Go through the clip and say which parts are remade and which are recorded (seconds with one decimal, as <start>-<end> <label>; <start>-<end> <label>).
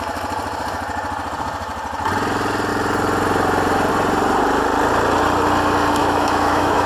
0.0-6.0 recorded; 6.0-6.9 remade